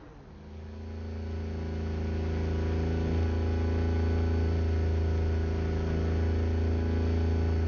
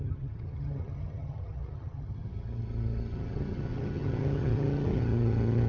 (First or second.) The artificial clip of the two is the second